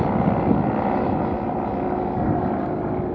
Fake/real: real